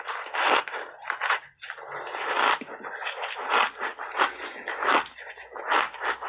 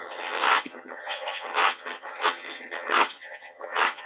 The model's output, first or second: second